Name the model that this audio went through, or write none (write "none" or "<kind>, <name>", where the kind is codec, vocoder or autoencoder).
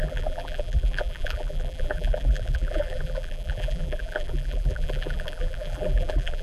vocoder, BigVGAN v2